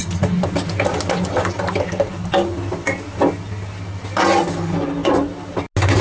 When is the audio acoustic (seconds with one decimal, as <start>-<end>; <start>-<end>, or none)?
0.0-6.0

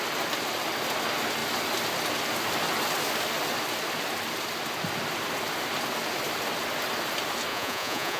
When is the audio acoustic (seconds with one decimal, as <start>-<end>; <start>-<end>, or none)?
0.0-7.5

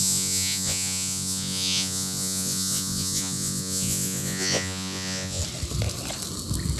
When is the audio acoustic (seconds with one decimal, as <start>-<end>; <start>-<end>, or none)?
5.4-6.8